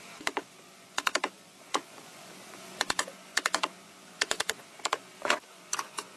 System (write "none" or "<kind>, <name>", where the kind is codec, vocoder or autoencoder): vocoder, Vocos